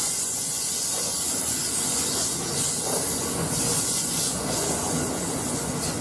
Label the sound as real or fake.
fake